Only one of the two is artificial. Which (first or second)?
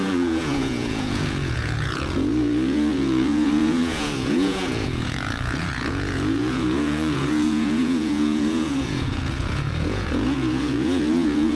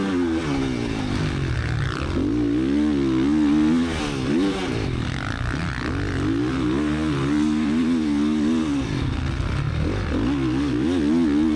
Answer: first